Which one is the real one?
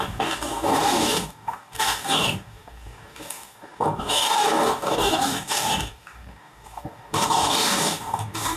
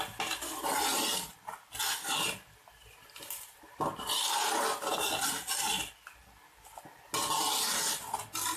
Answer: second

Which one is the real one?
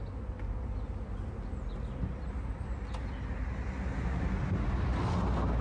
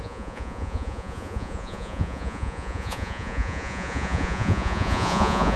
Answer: first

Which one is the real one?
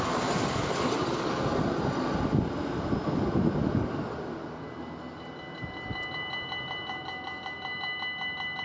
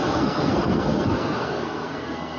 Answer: first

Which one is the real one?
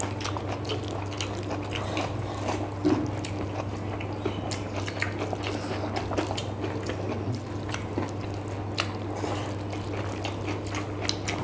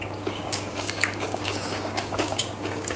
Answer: first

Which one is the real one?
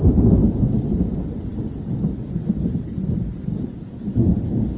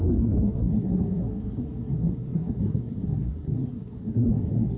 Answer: first